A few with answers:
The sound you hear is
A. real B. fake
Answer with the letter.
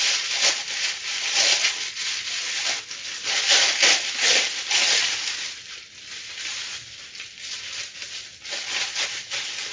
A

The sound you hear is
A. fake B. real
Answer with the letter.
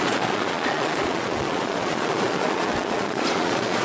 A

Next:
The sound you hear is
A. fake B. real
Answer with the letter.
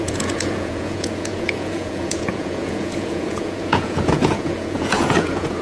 A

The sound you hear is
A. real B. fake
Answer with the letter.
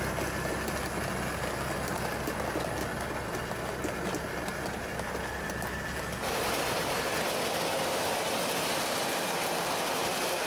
A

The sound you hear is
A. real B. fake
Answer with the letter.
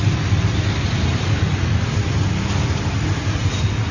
A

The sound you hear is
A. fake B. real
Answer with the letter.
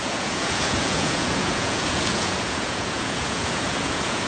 A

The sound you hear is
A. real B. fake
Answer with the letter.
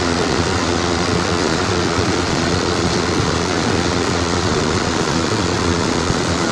B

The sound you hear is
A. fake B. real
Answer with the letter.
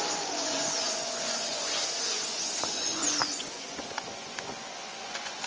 A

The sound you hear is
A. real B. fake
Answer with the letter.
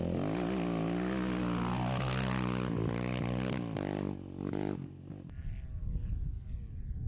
A